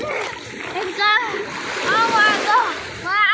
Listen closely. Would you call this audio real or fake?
real